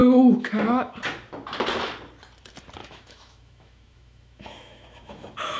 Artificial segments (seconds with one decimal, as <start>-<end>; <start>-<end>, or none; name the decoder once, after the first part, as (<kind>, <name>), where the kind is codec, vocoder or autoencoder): 0.0-0.9 (autoencoder, DAC-VAE); 2.8-5.6